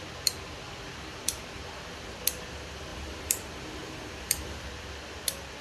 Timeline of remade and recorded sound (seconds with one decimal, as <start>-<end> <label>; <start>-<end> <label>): 0.0-2.9 recorded; 2.9-4.7 remade; 4.7-5.6 recorded